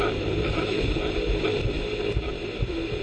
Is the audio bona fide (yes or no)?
no